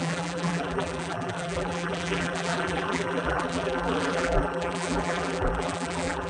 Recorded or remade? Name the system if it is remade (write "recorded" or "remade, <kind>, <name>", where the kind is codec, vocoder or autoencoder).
remade, vocoder, BigVGAN v2